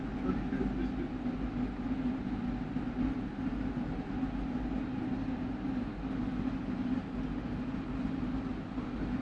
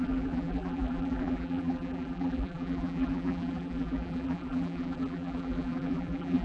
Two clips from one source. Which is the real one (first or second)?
first